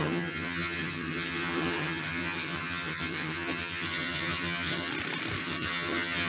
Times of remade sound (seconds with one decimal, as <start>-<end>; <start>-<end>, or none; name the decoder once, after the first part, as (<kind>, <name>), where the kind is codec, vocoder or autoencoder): 0.0-4.9 (vocoder, HiFi-GAN); 5.4-6.3